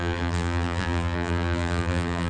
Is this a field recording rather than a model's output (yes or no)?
no